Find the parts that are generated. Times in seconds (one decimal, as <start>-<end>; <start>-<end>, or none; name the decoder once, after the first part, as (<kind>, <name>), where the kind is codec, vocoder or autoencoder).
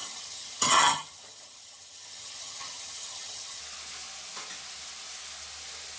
0.0-3.6 (vocoder, HiFi-GAN)